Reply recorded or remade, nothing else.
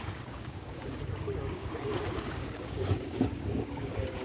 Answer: remade